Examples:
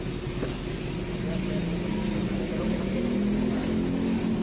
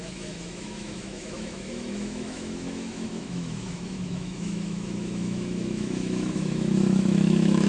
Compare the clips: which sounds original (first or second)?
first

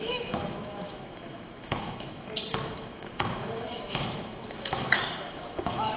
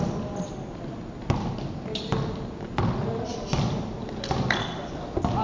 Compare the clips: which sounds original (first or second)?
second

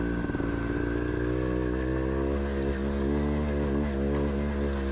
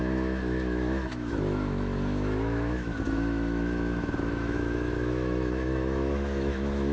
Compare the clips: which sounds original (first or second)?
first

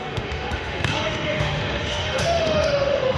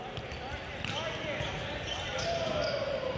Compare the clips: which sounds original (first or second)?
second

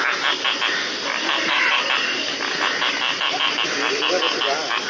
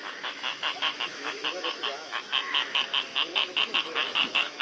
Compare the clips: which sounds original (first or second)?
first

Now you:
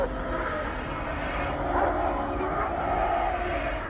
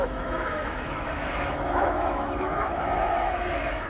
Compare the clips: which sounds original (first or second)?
first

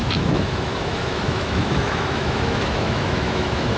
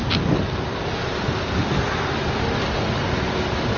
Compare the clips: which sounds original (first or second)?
second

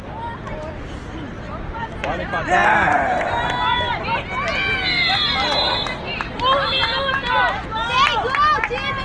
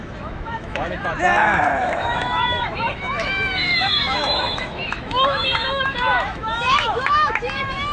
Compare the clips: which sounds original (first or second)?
first